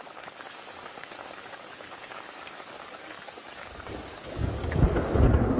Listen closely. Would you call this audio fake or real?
fake